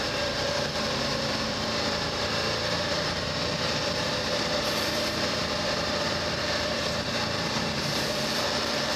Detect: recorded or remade remade